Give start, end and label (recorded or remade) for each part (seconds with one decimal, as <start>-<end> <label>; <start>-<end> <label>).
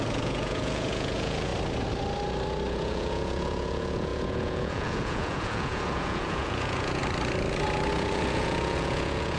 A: 0.0-1.5 remade; 1.5-2.7 recorded; 2.7-7.0 remade; 7.0-7.9 recorded; 7.9-9.4 remade